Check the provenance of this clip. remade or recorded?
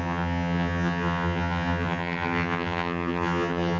remade